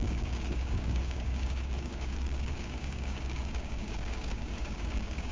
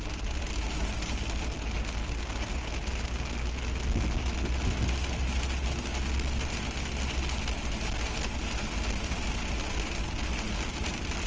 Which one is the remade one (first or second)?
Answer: first